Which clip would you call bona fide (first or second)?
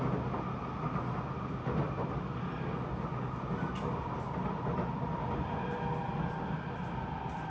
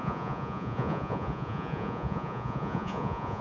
first